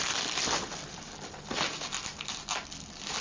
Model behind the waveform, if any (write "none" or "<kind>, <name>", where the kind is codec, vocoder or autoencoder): none